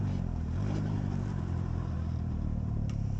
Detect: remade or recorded remade